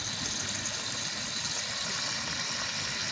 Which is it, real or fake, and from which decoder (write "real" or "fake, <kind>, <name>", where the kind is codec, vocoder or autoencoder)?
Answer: real